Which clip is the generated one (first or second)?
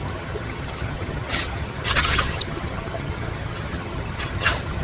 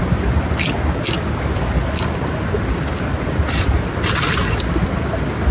first